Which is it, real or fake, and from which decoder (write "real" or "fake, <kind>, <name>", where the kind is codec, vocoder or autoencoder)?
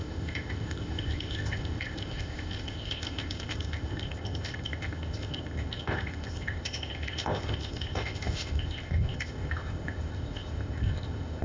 fake, codec, ZipCodec